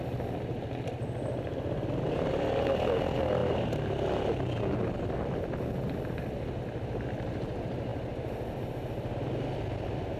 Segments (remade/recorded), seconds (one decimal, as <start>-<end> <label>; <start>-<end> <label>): 0.0-10.2 recorded